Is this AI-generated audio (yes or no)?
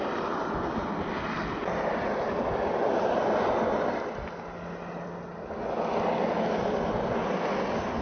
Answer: no